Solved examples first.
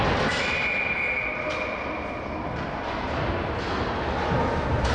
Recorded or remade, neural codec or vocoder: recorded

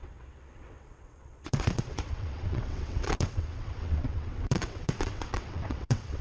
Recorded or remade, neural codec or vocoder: remade, vocoder, WaveNeXt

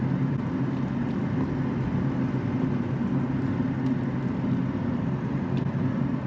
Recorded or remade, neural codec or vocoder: recorded